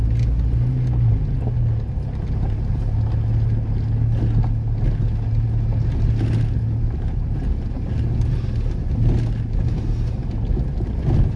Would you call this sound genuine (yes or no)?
yes